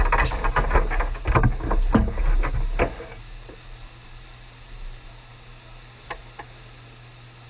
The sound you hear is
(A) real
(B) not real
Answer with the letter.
A